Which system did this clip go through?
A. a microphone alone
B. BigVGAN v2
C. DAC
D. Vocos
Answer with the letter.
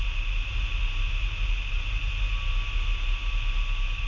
A